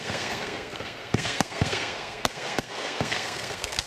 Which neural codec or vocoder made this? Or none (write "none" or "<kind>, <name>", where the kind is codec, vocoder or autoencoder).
codec, SNAC